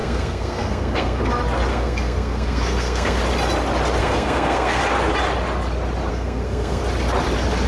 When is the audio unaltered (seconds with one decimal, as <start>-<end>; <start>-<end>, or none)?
1.2-1.7; 3.2-4.0; 4.8-6.1; 6.8-7.7